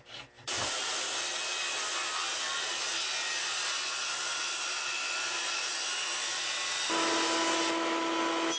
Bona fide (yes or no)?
yes